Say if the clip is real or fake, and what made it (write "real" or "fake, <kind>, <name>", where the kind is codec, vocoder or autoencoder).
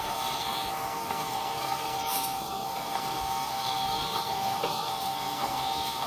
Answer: fake, codec, SNAC